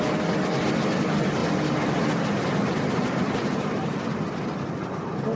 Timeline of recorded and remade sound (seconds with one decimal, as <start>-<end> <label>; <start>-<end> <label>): 0.0-5.4 recorded